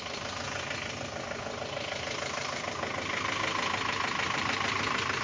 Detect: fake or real real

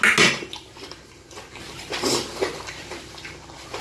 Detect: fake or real real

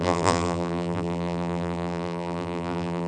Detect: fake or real fake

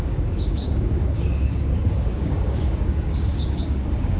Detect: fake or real fake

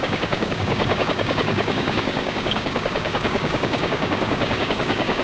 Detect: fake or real fake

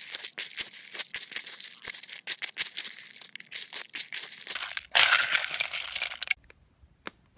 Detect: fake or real real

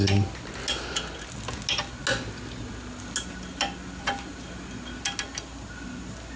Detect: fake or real real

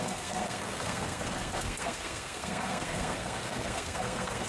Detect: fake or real fake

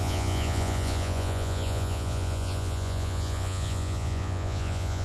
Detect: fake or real fake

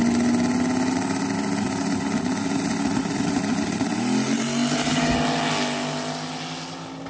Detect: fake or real real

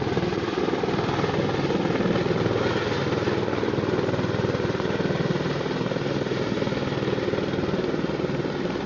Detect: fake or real real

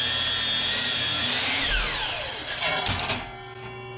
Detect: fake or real real